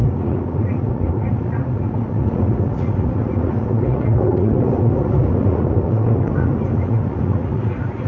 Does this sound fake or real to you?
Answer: fake